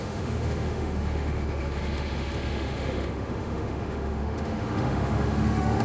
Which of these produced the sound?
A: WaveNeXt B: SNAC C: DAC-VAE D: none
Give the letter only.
C